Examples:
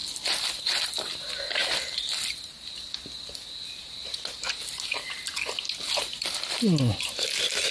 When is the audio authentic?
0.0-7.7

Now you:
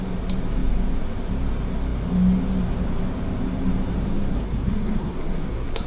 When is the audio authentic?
0.0-4.3

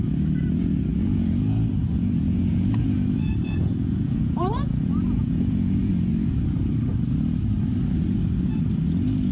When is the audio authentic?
0.0-0.9; 5.9-9.3

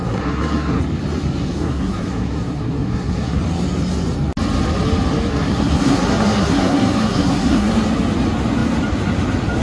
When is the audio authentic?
0.8-1.4; 3.4-5.3; 7.7-9.6

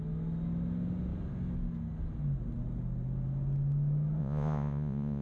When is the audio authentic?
0.0-4.2